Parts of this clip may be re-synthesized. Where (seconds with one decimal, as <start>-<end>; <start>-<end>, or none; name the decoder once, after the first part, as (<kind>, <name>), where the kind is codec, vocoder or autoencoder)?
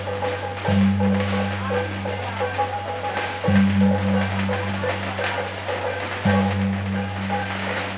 none